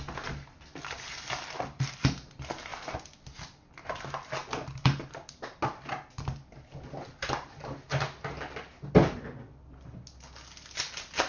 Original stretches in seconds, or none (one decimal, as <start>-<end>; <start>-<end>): 0.0-11.3